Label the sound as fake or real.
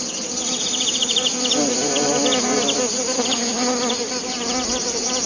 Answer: real